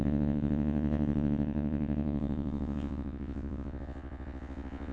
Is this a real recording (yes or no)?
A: no